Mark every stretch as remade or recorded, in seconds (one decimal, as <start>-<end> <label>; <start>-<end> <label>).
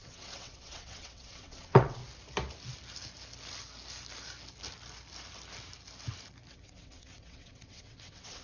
0.0-2.0 remade; 2.0-6.5 recorded; 6.5-8.4 remade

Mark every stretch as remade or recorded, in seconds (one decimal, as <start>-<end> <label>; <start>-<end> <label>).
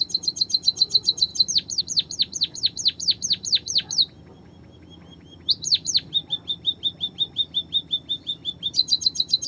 0.0-9.5 recorded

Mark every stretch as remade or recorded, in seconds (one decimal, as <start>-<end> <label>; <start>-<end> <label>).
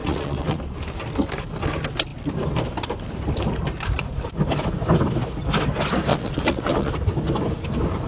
0.0-0.6 remade; 0.6-6.1 recorded; 6.1-6.9 remade; 6.9-8.1 recorded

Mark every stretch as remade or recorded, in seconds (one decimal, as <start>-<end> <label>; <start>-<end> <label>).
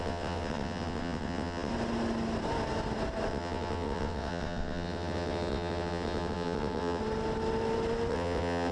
0.0-1.7 remade; 1.7-3.3 recorded; 3.3-7.0 remade; 7.0-8.1 recorded; 8.1-8.7 remade